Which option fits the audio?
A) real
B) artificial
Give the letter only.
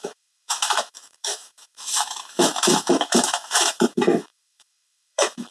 B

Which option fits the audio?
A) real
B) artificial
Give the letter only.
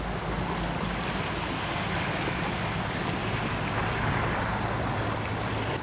A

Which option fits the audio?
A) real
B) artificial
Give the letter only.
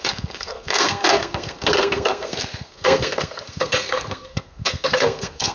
B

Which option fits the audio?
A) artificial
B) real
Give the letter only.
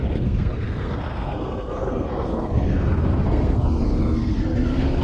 A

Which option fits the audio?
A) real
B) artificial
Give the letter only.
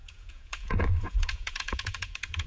B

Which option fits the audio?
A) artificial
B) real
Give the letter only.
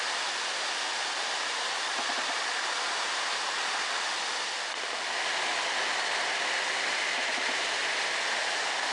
B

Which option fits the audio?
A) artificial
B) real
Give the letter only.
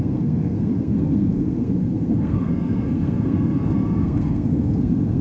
A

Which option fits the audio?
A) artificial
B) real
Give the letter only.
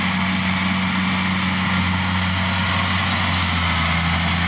B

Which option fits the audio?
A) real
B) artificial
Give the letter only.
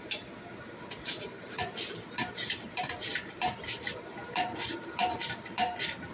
B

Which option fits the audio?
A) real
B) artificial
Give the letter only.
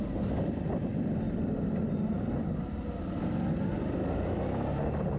A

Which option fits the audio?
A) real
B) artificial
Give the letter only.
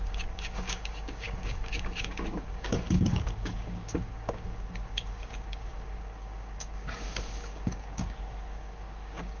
B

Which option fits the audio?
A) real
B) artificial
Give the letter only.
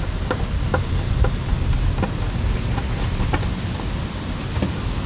A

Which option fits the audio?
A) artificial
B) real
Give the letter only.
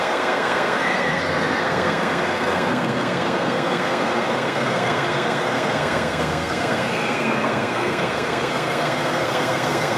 A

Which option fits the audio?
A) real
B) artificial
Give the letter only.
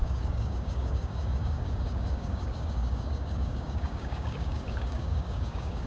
B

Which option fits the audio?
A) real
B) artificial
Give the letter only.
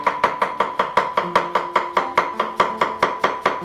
A